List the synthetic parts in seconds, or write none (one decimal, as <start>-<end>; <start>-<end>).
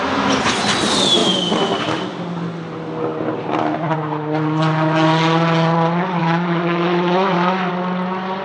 6.2-7.7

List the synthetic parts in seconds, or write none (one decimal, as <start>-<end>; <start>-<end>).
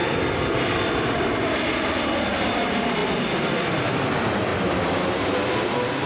0.0-4.5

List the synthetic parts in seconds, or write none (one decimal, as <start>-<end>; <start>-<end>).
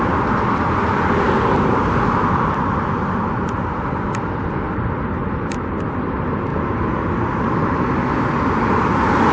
none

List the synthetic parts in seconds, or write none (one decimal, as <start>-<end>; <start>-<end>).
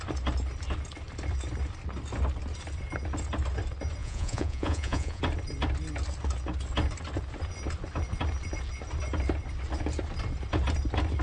4.0-5.2